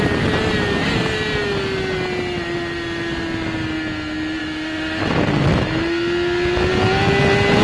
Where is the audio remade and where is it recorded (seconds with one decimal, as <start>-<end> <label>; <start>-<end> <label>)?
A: 0.0-4.4 recorded; 4.4-5.0 remade; 5.0-7.6 recorded